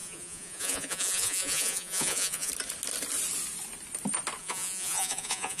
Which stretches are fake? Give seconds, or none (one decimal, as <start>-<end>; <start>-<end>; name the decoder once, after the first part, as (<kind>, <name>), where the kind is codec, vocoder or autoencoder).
0.0-2.5 (vocoder, Vocos); 4.4-5.6